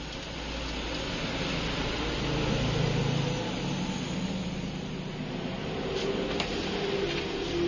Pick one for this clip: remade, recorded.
recorded